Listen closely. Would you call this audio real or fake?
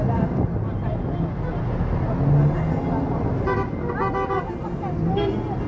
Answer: real